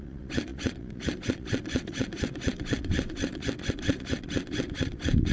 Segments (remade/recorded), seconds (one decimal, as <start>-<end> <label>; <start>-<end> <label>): 0.0-5.3 remade